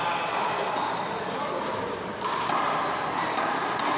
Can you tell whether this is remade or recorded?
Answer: recorded